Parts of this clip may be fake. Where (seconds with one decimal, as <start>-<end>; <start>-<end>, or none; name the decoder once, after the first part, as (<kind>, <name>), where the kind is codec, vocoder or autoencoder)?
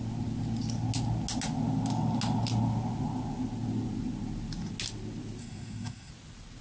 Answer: 5.4-6.1 (codec, SNAC)